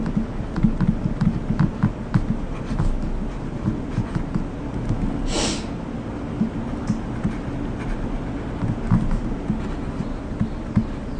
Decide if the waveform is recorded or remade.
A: recorded